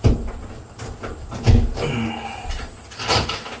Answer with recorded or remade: recorded